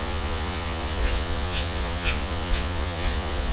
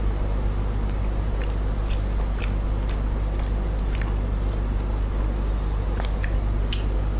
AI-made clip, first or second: first